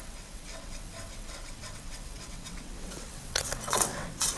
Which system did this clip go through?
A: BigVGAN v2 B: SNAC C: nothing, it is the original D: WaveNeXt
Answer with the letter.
D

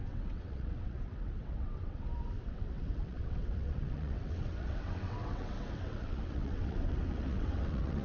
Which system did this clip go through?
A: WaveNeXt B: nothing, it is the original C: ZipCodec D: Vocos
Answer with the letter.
A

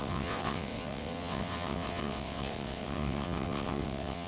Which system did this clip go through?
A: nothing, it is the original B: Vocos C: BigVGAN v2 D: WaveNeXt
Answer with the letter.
D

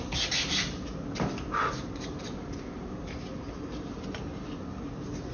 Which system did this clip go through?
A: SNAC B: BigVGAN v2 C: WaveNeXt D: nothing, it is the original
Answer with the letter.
D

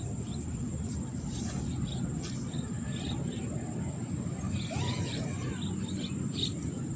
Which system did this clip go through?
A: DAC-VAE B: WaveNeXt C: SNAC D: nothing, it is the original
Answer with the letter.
D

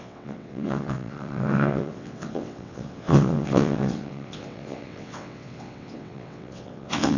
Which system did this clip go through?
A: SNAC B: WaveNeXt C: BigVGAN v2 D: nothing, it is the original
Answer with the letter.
B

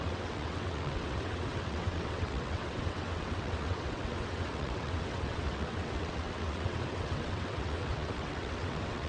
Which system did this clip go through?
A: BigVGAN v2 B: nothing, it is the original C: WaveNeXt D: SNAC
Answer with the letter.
C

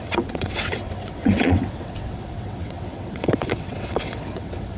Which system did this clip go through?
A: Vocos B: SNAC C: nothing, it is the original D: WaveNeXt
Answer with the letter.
D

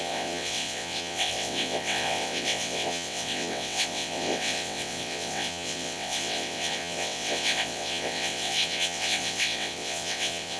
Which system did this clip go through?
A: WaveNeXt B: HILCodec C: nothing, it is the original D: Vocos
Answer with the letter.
A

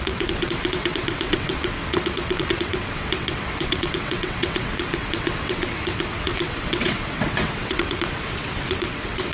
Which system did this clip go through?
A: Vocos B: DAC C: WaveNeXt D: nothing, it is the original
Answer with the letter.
C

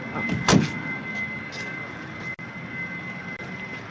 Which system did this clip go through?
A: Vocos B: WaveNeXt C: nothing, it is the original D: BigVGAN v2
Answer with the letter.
C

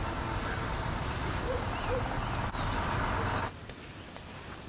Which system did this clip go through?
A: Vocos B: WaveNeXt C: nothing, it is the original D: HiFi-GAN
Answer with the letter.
C